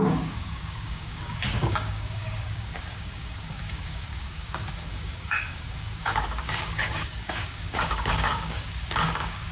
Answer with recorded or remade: remade